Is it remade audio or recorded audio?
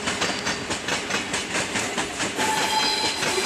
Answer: recorded